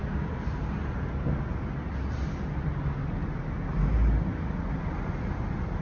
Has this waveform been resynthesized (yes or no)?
no